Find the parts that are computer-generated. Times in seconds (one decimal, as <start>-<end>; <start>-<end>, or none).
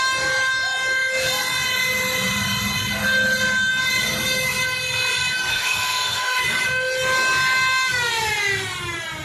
5.5-6.4